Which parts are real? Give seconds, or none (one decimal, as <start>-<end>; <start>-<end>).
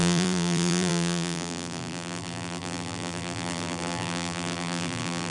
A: none